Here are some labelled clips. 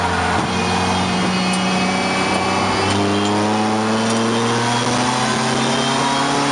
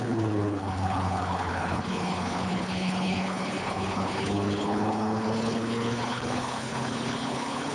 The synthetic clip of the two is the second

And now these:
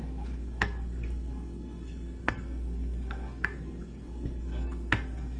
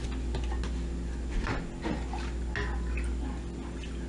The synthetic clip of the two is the first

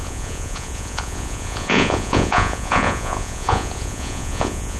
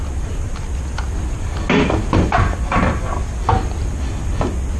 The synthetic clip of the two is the first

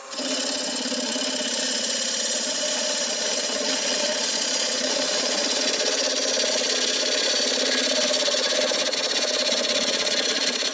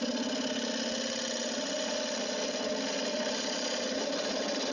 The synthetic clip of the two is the first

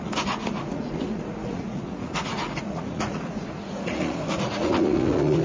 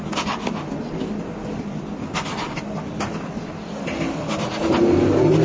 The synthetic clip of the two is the first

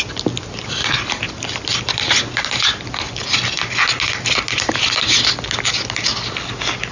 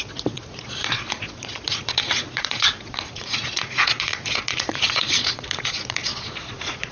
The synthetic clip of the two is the second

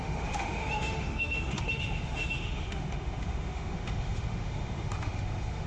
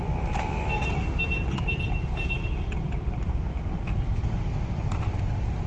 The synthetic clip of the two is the first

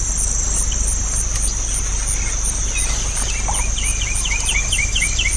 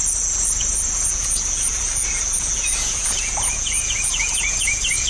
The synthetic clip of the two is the second